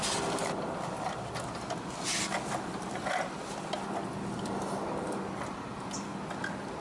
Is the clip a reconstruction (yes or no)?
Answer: no